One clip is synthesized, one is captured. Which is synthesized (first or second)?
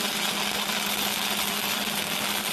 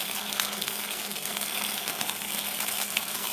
second